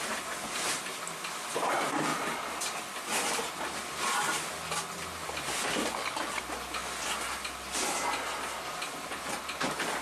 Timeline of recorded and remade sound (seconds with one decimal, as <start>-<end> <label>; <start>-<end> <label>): 0.0-10.0 recorded